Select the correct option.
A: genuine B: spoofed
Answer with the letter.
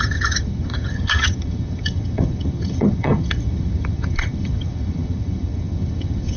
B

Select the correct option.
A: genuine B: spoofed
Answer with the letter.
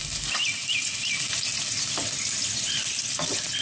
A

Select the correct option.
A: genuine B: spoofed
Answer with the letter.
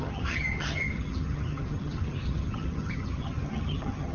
B